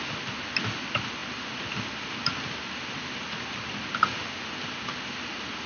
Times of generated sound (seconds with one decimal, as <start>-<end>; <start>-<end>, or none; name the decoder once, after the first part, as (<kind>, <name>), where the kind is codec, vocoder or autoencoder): none